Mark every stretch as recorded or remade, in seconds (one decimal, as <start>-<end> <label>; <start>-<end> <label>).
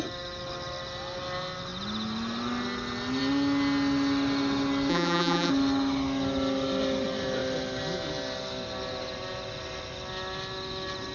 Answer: 0.0-4.9 recorded; 4.9-5.5 remade; 5.5-11.1 recorded